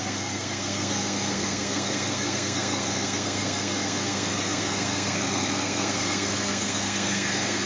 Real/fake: fake